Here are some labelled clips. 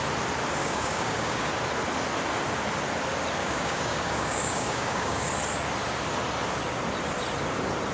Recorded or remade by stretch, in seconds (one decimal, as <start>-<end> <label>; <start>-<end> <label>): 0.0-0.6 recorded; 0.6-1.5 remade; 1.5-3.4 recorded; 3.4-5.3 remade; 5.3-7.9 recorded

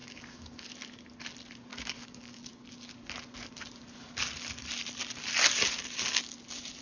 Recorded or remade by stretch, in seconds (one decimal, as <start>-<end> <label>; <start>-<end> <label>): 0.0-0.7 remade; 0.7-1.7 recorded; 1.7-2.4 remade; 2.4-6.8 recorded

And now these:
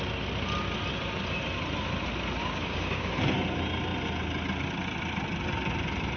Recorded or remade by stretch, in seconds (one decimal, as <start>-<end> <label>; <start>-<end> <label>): 0.0-2.4 recorded; 2.4-3.1 remade; 3.1-6.2 recorded